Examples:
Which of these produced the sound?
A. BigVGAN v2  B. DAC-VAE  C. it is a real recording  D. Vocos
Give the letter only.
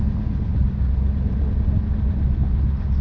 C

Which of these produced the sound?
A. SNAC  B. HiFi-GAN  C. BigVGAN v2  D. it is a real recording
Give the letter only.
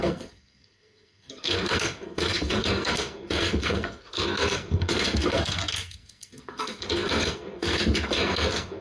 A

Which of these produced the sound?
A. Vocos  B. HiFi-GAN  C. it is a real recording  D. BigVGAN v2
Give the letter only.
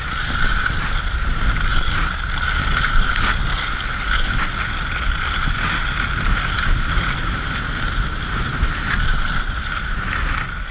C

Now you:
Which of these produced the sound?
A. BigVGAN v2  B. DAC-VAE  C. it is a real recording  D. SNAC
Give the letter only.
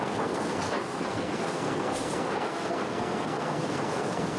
D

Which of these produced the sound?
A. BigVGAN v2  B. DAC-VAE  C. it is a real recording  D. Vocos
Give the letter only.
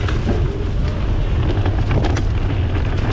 C